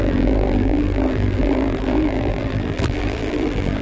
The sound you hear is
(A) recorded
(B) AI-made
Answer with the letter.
B